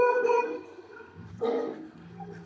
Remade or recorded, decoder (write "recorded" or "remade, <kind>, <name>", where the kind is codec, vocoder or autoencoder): remade, codec, SNAC